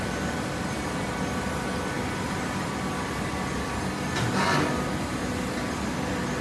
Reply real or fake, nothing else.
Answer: real